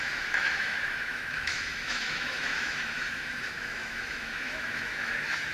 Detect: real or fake fake